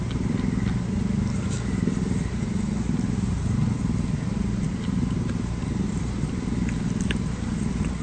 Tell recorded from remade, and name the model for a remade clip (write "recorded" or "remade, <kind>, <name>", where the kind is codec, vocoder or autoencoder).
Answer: recorded